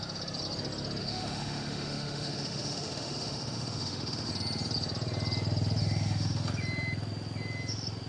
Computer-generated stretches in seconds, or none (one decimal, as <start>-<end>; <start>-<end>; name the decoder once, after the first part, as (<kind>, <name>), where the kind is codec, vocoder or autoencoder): 1.0-4.3 (autoencoder, DAC-VAE); 5.8-6.5

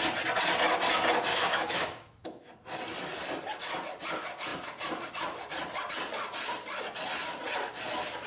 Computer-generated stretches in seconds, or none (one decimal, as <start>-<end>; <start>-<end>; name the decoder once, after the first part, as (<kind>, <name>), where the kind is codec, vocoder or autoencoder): 1.3-2.5 (autoencoder, DAC-VAE)

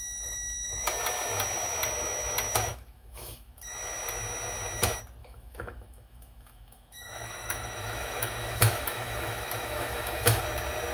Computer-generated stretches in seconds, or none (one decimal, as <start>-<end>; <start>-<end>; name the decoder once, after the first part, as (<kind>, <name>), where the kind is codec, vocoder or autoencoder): 2.7-3.6 (autoencoder, DAC-VAE); 5.2-10.4

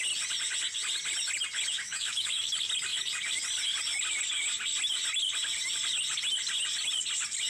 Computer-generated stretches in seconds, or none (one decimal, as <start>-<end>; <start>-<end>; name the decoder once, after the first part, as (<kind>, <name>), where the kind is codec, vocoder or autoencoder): 1.7-2.5 (autoencoder, DAC-VAE)

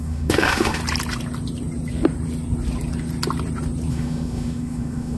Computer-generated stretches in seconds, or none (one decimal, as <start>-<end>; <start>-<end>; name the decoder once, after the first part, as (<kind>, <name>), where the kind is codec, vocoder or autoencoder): 0.0-0.8 (autoencoder, DAC-VAE); 3.9-5.2

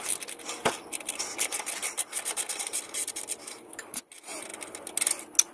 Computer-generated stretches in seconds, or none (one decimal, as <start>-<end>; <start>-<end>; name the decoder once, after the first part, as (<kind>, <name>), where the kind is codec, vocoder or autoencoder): 3.4-4.0 (autoencoder, DAC-VAE)